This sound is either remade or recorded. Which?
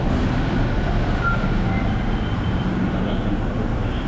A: recorded